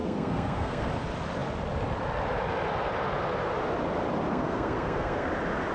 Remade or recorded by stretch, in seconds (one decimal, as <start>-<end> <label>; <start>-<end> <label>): 0.0-0.9 remade; 0.9-4.3 recorded; 4.3-5.3 remade; 5.3-5.7 recorded